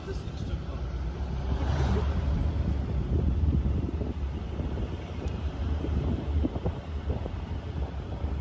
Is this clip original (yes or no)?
no